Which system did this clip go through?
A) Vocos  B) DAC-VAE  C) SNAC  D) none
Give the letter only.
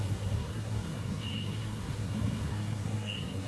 C